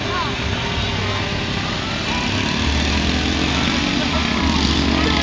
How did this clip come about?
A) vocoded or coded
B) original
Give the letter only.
B